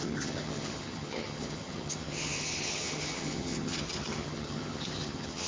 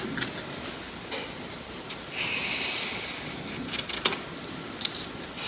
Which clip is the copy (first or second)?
first